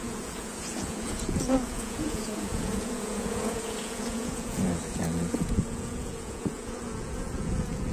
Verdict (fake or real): fake